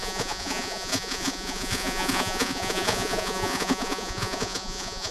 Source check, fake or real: fake